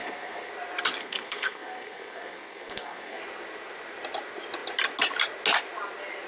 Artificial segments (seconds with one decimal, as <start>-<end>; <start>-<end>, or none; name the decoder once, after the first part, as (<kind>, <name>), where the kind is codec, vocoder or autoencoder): 0.0-0.5 (codec, SNAC); 1.0-3.2